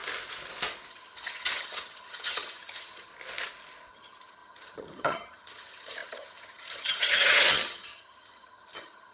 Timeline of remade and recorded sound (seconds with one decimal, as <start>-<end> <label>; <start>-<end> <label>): 0.0-0.9 recorded; 0.9-3.1 remade; 3.1-3.9 recorded; 3.9-9.1 remade